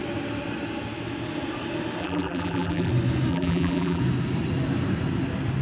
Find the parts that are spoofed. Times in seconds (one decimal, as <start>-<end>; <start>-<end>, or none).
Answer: 2.0-2.9; 3.3-4.0